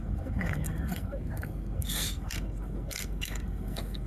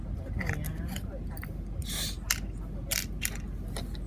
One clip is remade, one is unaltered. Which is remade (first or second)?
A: first